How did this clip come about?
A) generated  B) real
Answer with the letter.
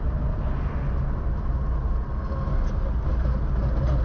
B